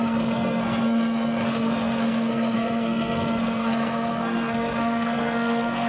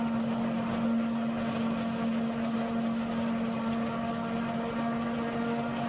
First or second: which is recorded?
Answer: second